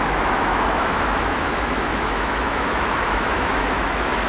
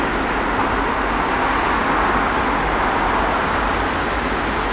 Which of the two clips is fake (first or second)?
first